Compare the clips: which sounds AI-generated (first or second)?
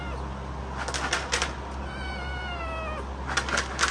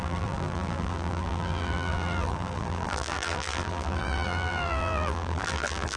second